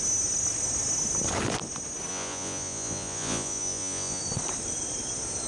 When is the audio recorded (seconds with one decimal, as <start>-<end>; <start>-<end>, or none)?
0.0-2.1; 4.2-5.5